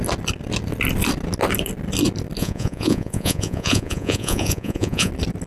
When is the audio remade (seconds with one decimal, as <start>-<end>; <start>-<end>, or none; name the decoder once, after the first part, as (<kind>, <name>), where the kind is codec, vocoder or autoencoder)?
2.4-5.1 (vocoder, Vocos)